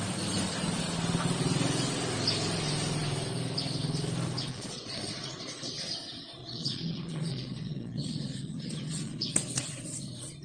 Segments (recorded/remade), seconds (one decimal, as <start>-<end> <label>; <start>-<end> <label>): 0.0-4.5 recorded; 4.5-5.7 remade; 5.7-6.4 recorded; 6.4-9.3 remade; 9.3-10.4 recorded